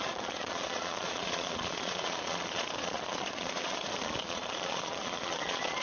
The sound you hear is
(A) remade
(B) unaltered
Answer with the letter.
A